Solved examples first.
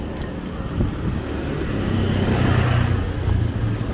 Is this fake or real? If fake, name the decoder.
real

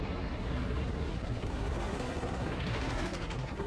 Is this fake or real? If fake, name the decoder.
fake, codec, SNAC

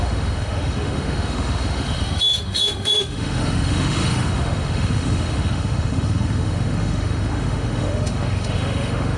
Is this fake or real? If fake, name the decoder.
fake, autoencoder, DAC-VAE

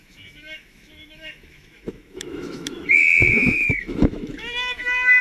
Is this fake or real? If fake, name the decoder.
fake, autoencoder, DAC-VAE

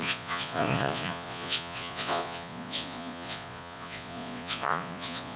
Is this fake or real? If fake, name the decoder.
fake, vocoder, Vocos